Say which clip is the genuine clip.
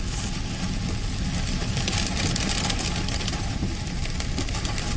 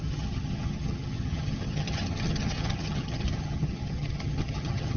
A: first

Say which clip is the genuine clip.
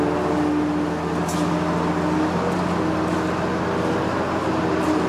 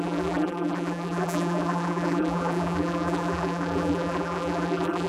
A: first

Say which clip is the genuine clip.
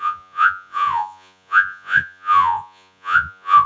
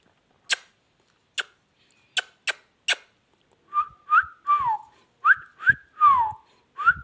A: second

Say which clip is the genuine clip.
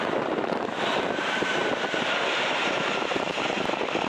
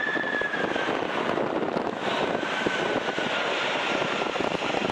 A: second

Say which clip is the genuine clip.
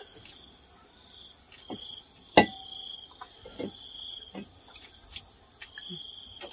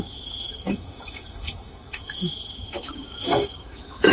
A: first